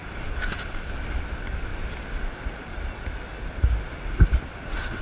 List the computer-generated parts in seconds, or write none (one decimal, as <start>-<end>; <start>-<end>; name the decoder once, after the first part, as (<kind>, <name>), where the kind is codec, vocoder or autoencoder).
0.0-0.6 (vocoder, BigVGAN v2)

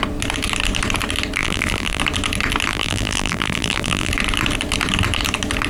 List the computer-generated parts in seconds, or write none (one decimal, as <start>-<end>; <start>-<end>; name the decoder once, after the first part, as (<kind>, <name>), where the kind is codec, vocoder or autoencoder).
1.4-2.0 (vocoder, BigVGAN v2); 2.7-4.1

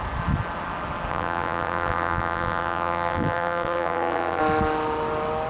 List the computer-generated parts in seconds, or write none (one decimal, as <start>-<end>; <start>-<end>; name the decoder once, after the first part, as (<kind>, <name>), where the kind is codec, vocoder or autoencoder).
1.1-4.4 (vocoder, BigVGAN v2)

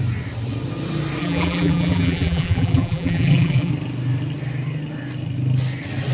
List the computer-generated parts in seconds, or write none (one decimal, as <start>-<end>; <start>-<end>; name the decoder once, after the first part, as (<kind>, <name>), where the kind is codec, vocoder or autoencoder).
1.2-3.7 (vocoder, BigVGAN v2)

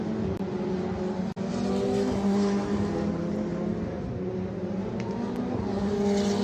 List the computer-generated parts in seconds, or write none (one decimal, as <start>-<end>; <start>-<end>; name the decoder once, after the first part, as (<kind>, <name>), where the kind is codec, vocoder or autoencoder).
3.5-5.1 (vocoder, BigVGAN v2)